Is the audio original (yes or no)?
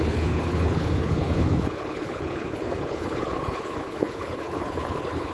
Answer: no